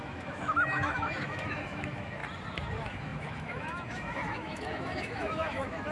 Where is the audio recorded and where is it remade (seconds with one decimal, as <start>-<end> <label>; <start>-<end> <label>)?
0.0-2.2 remade; 2.2-2.7 recorded; 2.7-5.9 remade